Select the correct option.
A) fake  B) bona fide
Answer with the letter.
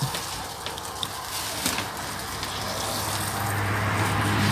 B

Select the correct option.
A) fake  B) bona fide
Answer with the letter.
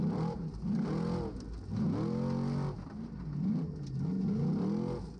B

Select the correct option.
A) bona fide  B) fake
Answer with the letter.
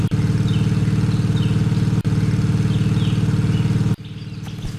A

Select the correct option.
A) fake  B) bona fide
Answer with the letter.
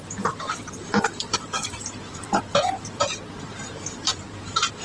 A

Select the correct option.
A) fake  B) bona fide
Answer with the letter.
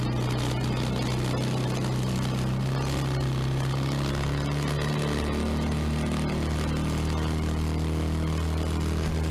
B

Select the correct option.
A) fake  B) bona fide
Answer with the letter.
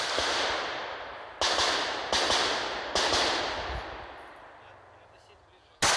B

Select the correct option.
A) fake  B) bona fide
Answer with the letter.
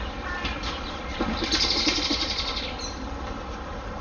B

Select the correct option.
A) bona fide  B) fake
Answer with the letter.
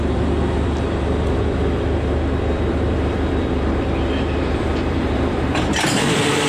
B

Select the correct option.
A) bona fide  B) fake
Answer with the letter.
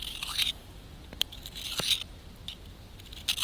B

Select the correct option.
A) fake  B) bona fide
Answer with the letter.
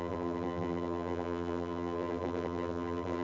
A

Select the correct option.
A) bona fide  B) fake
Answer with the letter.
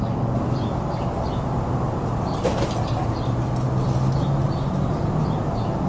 A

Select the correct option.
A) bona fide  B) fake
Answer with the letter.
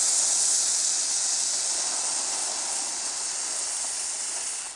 A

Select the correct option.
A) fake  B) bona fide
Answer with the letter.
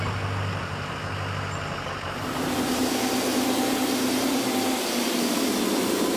A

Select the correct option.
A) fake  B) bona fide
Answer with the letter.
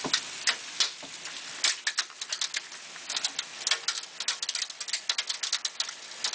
B